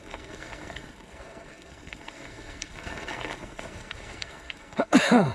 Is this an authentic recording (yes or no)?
no